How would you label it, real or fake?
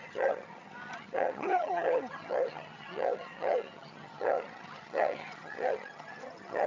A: fake